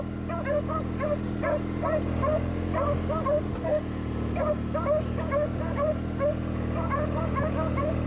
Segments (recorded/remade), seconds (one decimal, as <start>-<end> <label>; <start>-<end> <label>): 0.0-8.1 recorded